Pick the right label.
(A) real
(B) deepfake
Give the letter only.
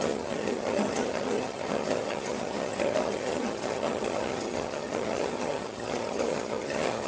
B